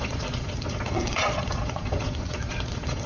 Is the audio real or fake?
fake